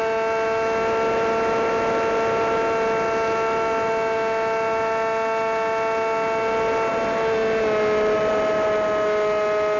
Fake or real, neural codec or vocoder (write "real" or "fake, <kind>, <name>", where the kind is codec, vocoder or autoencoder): real